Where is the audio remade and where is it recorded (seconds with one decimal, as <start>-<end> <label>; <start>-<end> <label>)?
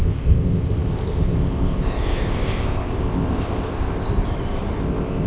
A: 0.0-4.1 remade; 4.1-4.8 recorded; 4.8-5.3 remade